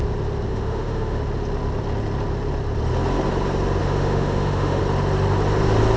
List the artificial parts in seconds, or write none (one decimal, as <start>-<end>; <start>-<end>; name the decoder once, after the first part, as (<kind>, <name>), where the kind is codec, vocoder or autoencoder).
0.5-1.2 (autoencoder, DAC-VAE); 3.8-4.8